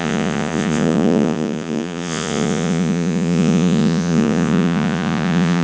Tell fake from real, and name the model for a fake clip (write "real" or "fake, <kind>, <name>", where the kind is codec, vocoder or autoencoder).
fake, vocoder, Vocos